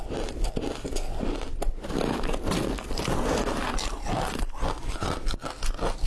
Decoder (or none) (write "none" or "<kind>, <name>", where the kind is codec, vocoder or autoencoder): none